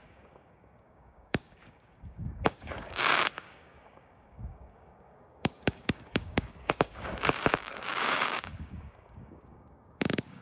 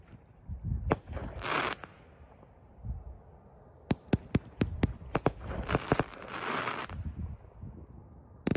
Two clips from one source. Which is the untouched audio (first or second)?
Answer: second